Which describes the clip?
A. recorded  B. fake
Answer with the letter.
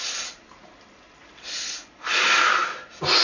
A